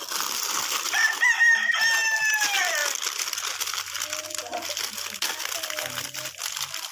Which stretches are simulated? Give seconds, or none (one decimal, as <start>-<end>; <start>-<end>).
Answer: none